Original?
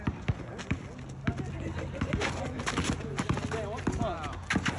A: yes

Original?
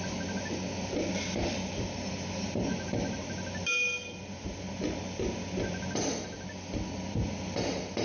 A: yes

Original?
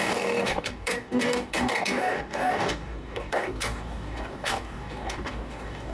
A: no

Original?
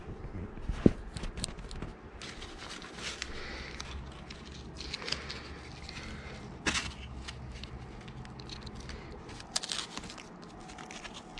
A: yes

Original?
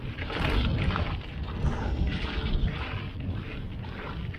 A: yes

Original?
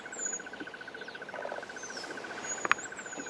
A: yes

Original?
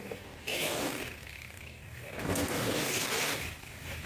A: no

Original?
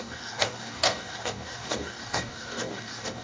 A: no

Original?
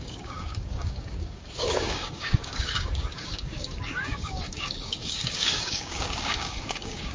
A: no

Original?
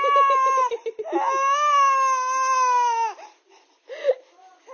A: yes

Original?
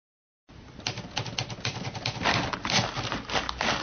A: yes